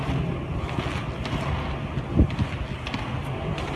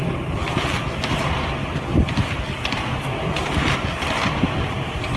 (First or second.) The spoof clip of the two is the second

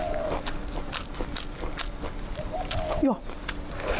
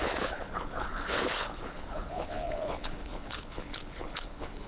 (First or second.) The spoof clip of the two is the second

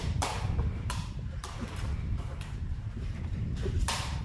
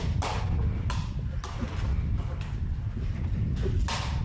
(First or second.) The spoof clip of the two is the first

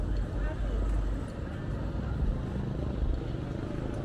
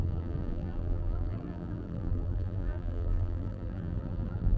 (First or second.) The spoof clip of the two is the second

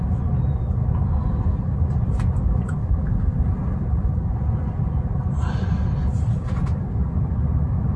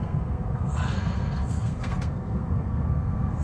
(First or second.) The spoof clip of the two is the second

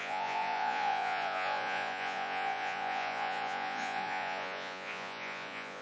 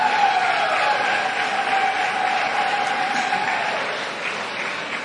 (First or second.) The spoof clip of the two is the first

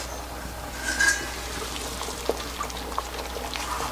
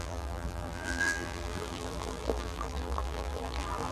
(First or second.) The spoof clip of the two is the second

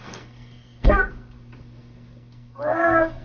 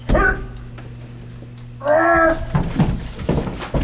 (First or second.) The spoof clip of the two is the first